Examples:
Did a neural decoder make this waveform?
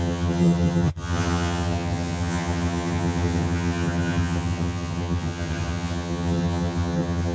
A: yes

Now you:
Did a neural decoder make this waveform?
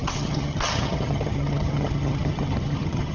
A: yes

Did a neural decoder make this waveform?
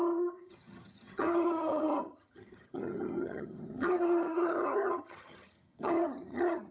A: yes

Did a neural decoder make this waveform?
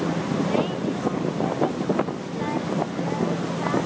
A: no